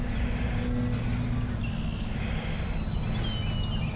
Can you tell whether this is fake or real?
real